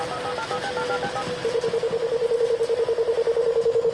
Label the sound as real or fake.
real